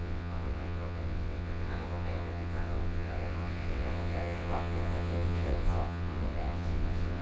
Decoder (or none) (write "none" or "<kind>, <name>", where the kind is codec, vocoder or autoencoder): vocoder, WaveNeXt